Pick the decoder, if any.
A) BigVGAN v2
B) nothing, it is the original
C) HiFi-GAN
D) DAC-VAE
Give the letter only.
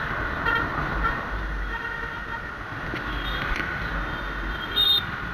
B